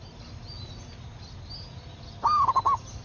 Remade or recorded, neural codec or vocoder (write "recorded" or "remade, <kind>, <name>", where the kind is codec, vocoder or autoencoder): recorded